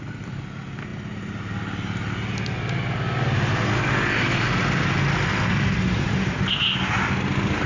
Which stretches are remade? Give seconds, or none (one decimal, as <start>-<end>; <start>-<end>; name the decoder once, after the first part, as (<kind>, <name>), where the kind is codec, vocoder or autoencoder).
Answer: none